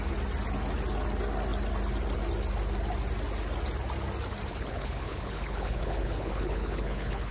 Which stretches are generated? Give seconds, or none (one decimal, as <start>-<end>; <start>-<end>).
4.5-7.3